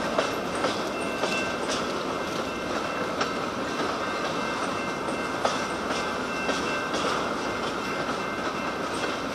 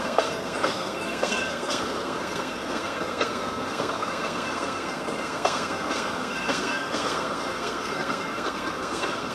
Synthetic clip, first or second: second